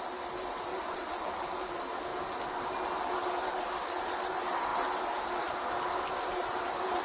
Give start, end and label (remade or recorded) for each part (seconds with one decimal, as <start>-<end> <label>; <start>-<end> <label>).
0.0-7.0 recorded